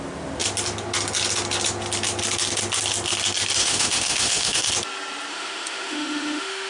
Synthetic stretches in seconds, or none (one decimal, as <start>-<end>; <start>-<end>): 3.6-4.7; 5.3-6.7